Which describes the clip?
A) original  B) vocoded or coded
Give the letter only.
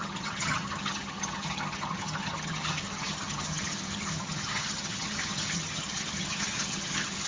B